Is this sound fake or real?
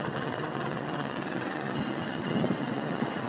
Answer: fake